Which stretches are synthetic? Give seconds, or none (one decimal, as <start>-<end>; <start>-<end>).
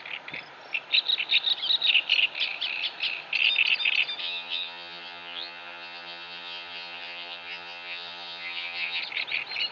4.2-9.0